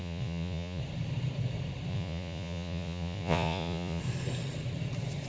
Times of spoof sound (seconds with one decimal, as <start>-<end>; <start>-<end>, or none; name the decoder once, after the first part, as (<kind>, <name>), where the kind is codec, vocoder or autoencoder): 0.0-0.8 (vocoder, Vocos); 1.9-4.0